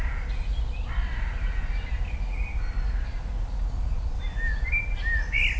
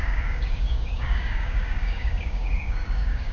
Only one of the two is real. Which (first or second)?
first